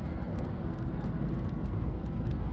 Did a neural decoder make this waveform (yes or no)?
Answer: yes